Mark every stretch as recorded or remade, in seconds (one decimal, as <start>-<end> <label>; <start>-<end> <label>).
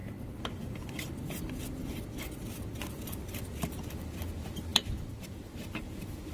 0.0-6.3 recorded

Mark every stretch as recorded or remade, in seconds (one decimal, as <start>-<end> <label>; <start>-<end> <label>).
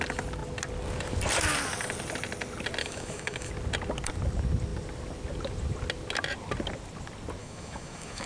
0.0-2.8 recorded; 2.8-3.5 remade; 3.5-7.4 recorded; 7.4-8.3 remade